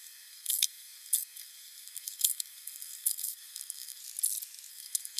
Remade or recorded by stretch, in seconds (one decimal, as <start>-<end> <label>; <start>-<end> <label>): 0.0-4.0 remade; 4.0-4.7 recorded; 4.7-5.2 remade

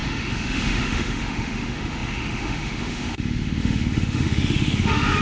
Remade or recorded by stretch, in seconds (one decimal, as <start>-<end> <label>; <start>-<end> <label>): 0.0-5.2 remade

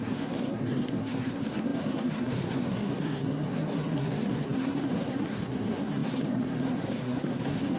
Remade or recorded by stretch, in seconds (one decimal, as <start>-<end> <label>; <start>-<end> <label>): 0.0-7.8 remade

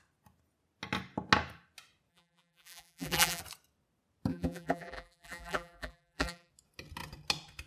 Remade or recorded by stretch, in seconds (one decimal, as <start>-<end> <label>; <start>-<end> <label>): 0.0-2.1 recorded; 2.1-3.4 remade; 3.4-4.3 recorded; 4.3-6.5 remade; 6.5-7.7 recorded

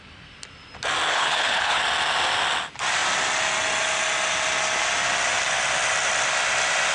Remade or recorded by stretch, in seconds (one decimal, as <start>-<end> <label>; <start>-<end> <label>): 0.0-1.1 recorded; 1.1-1.8 remade; 1.8-6.9 recorded

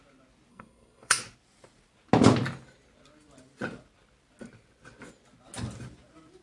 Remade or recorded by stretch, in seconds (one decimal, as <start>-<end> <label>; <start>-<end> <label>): 0.0-0.5 recorded; 0.5-1.2 remade; 1.2-6.4 recorded

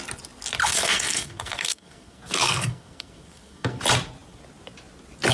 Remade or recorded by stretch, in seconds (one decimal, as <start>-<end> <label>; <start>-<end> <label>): 0.0-0.6 recorded; 0.6-3.8 remade; 3.8-5.3 recorded